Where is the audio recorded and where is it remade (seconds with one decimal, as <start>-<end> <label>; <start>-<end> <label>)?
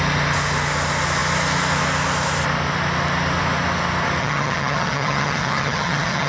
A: 0.0-4.2 recorded; 4.2-6.3 remade